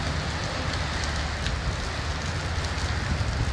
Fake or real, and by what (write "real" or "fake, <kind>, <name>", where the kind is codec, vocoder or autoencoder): real